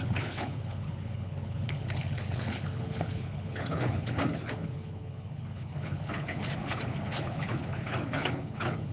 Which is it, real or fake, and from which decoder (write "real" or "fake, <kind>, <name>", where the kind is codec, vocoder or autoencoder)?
fake, codec, HILCodec